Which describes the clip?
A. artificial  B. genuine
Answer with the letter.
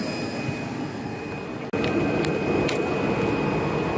B